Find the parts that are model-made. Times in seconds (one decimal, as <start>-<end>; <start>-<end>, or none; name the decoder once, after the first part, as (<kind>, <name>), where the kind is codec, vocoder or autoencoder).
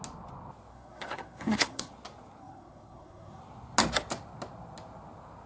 0.7-1.9 (codec, SNAC); 2.4-3.4